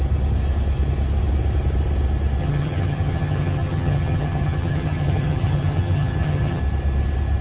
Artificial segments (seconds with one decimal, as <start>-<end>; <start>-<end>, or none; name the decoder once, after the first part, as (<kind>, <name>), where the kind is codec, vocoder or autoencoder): 2.4-6.6 (vocoder, HiFi-GAN)